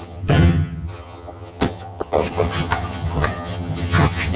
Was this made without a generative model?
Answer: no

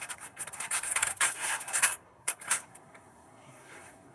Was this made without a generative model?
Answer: no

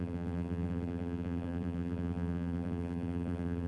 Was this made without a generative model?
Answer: no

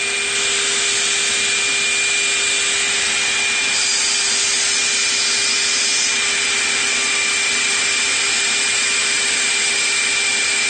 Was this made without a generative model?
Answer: yes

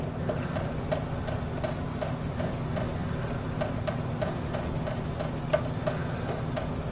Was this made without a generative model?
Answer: yes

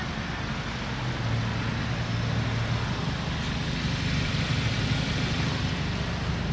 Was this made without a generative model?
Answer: yes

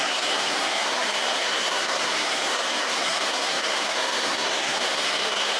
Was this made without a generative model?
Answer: no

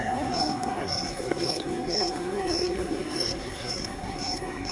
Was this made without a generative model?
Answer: no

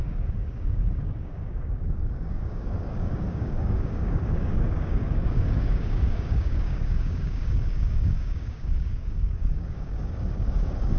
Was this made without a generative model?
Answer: no